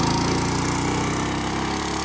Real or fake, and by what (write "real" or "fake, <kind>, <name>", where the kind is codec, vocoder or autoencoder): real